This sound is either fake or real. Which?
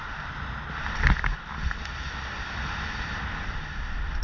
real